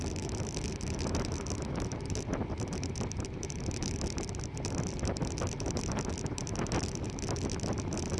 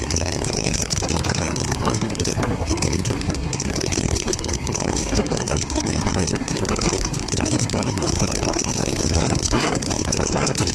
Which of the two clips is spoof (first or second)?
second